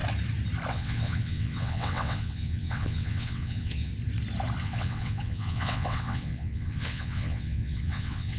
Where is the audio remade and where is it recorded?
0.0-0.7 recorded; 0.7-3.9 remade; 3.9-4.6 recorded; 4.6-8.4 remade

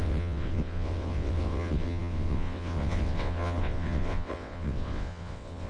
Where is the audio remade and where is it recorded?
0.0-5.7 remade

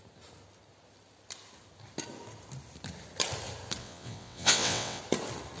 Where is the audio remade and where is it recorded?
0.0-3.8 recorded; 3.8-5.0 remade; 5.0-5.6 recorded

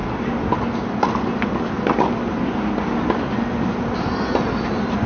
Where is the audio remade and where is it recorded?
0.0-5.1 recorded

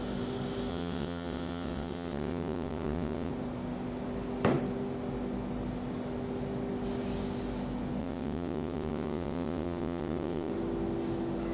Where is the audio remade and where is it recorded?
0.0-0.7 recorded; 0.7-3.3 remade; 3.3-8.0 recorded; 8.0-10.5 remade; 10.5-11.5 recorded

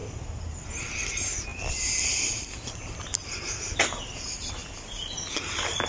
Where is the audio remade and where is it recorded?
0.0-5.9 recorded